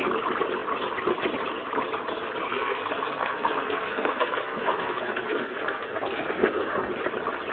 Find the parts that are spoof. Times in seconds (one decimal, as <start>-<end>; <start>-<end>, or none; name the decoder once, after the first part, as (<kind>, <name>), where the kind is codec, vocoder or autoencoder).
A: 2.5-6.9 (codec, SNAC)